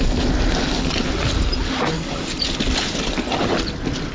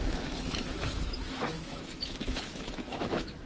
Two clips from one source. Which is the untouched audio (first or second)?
first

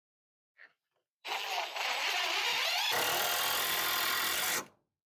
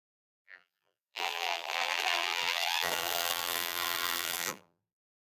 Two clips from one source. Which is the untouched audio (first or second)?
first